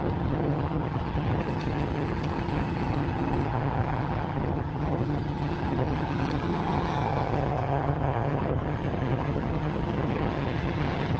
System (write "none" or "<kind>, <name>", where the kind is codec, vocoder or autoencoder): vocoder, HiFi-GAN